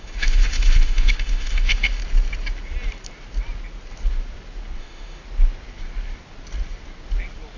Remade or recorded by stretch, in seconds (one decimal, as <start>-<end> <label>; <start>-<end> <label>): 0.0-2.0 remade; 2.0-4.8 recorded; 4.8-5.2 remade; 5.2-7.6 recorded